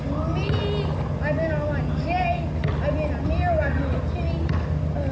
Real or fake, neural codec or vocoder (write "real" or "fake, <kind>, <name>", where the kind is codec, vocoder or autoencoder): real